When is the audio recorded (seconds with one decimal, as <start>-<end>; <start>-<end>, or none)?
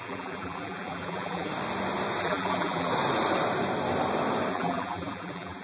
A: 1.5-2.2; 2.9-4.5